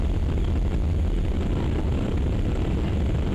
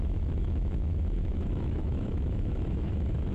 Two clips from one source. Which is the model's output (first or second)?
second